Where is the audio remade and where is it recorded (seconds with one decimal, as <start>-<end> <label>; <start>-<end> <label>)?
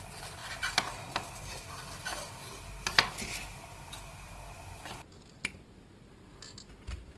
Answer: 0.0-7.2 recorded